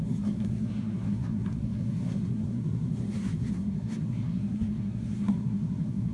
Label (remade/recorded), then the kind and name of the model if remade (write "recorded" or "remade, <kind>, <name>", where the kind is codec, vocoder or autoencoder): remade, codec, SNAC